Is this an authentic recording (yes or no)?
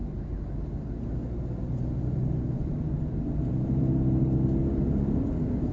yes